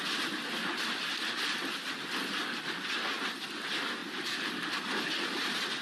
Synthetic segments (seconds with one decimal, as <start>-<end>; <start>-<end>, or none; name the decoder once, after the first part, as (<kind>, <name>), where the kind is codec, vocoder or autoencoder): 4.0-4.8 (vocoder, BigVGAN v2)